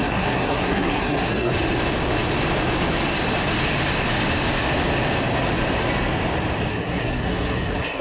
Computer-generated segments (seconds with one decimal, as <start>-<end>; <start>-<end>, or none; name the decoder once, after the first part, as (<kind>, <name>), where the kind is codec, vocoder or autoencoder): 0.0-1.5 (codec, SNAC); 6.7-8.0